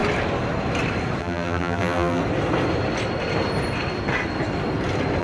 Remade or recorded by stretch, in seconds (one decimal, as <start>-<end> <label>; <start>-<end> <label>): 0.0-1.2 recorded; 1.2-2.2 remade; 2.2-5.2 recorded